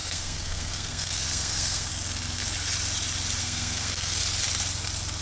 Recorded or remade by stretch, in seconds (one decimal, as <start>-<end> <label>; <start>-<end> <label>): 0.0-1.9 remade; 1.9-3.4 recorded; 3.4-4.2 remade; 4.2-5.2 recorded